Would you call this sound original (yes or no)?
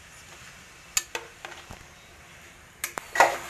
yes